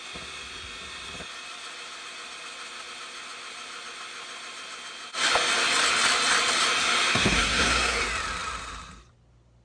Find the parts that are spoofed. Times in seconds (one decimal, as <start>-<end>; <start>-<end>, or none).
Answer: 7.1-8.0